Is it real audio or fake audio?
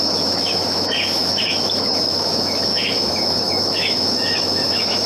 fake